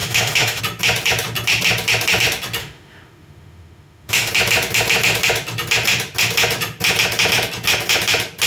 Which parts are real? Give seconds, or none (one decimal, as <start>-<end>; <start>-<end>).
0.6-2.6; 4.3-8.5